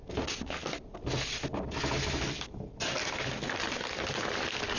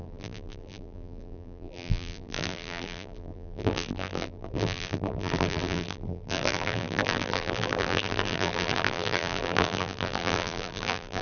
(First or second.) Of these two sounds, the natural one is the first